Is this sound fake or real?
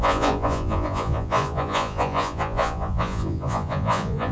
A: fake